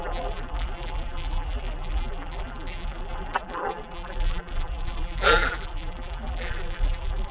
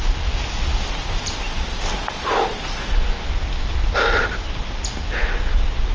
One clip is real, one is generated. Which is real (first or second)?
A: second